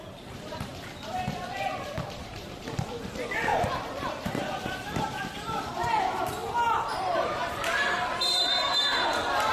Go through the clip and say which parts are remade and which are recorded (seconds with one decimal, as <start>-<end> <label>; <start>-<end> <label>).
0.0-0.7 remade; 0.7-2.2 recorded; 2.2-3.5 remade; 3.5-5.6 recorded; 5.6-9.5 remade